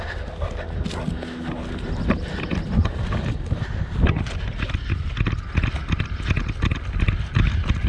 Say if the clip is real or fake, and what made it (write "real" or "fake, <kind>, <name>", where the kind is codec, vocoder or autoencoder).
real